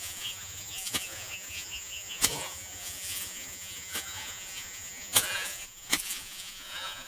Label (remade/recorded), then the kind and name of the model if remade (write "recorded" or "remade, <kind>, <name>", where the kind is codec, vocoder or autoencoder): remade, vocoder, Vocos